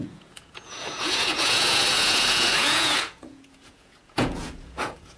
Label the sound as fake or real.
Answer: fake